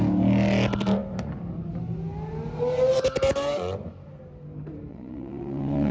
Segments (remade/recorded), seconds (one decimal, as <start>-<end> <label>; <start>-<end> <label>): 0.0-4.9 recorded; 4.9-5.9 remade